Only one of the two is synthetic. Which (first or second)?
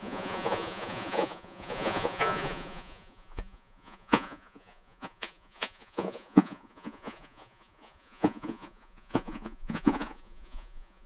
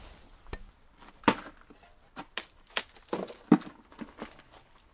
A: first